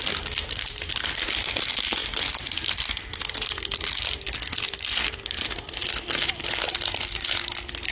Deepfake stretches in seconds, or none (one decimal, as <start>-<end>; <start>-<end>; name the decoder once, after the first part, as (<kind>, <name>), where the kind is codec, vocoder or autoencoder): none